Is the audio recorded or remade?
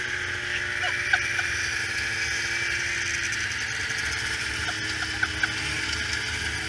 recorded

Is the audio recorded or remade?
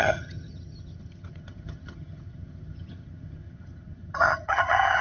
remade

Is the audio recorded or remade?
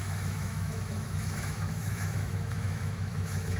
remade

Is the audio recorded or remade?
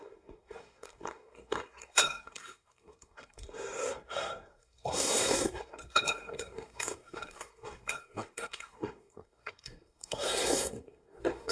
remade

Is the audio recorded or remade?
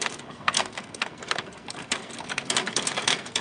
remade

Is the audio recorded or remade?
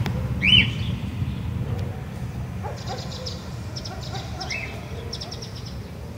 recorded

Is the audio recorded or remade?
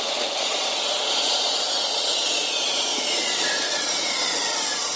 remade